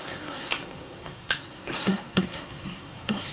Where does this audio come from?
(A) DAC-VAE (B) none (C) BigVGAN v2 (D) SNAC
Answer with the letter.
D